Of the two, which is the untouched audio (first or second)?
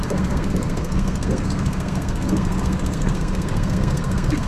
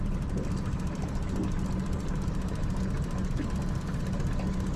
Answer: second